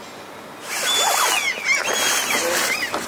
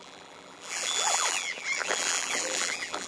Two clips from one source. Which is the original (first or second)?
first